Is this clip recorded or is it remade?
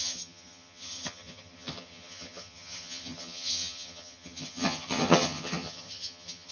remade